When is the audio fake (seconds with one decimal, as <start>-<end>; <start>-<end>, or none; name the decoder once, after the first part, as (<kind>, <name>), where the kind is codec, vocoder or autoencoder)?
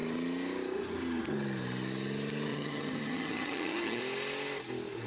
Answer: 2.5-4.0 (vocoder, HiFi-GAN)